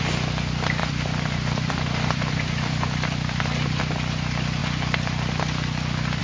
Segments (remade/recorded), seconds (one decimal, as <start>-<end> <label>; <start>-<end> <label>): 0.0-0.8 recorded; 0.8-3.8 remade; 3.8-6.2 recorded